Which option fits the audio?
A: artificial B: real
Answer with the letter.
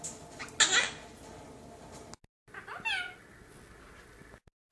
B